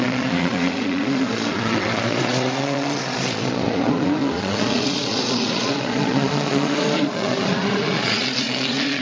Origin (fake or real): fake